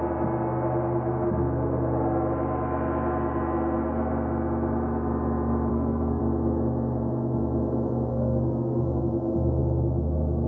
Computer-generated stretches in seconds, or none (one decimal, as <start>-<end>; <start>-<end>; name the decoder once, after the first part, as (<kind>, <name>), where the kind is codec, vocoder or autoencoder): 5.7-6.2 (codec, SNAC); 8.1-9.0